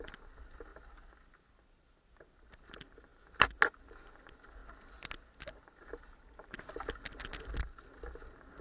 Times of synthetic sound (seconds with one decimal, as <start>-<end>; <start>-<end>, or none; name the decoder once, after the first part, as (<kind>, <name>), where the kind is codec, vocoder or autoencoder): none